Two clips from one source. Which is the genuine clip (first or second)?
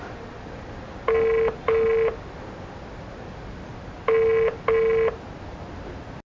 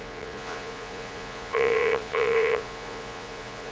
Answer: first